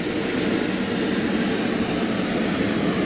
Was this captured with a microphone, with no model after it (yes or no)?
yes